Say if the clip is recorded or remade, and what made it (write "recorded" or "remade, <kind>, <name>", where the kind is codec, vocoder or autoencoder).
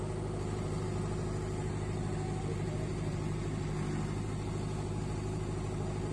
recorded